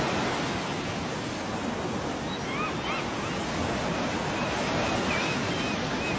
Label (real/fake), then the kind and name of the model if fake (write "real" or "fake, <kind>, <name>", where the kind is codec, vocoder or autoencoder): real